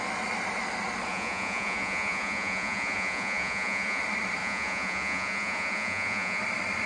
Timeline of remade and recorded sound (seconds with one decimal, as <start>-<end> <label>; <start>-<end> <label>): 0.0-1.1 recorded; 1.1-4.0 remade; 4.0-4.4 recorded; 4.4-6.4 remade; 6.4-6.9 recorded